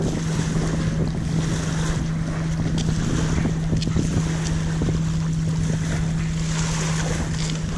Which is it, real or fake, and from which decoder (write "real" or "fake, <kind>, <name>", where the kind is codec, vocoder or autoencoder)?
real